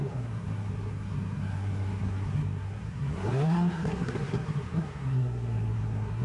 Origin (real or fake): fake